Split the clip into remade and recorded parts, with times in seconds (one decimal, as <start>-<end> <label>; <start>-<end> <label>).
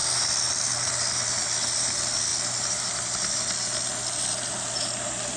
0.0-5.4 recorded